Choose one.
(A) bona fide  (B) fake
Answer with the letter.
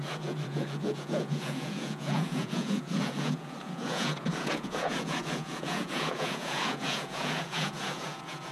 B